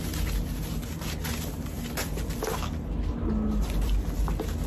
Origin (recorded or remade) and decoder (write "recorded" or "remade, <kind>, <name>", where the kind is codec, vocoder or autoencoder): recorded